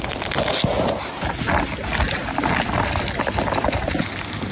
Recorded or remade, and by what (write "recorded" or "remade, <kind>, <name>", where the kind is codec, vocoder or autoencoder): recorded